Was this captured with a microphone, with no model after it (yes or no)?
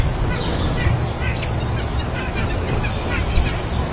yes